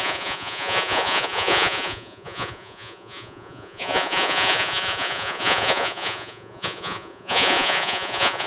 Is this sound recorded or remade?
remade